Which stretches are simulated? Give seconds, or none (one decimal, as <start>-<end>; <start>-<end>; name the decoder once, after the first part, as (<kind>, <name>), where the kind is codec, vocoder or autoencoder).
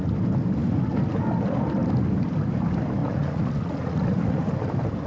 3.0-4.5 (vocoder, Vocos)